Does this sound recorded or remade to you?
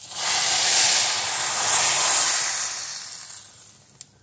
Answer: recorded